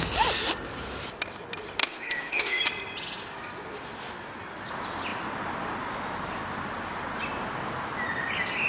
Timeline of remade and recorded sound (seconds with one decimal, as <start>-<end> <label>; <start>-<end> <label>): 0.0-1.8 recorded; 1.8-2.6 remade; 2.6-8.7 recorded

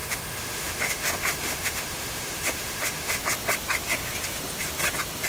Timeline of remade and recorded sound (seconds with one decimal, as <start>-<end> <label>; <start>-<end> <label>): 0.0-3.2 remade; 3.2-5.3 recorded

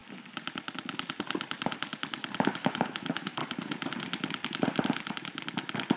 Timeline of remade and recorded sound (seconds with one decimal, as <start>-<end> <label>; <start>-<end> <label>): 0.0-2.6 recorded; 2.6-3.4 remade; 3.4-6.0 recorded

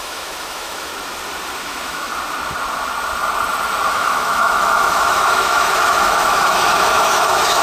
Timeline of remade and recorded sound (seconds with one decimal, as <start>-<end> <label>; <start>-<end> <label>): 0.0-0.9 remade; 0.9-1.6 recorded; 1.6-2.1 remade; 2.1-3.9 recorded; 3.9-7.6 remade

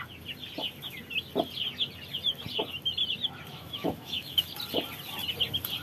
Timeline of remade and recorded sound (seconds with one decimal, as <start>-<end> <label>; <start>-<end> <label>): 0.0-3.5 recorded; 3.5-4.4 remade; 4.4-5.8 recorded